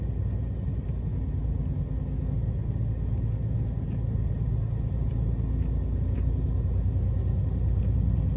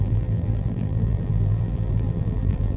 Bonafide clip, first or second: first